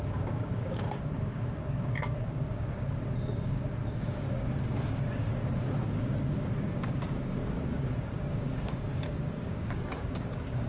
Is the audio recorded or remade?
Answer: remade